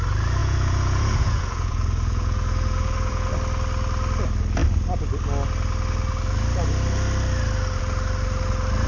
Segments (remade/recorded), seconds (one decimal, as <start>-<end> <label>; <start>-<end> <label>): 0.0-0.4 recorded; 0.4-3.3 remade; 3.3-8.9 recorded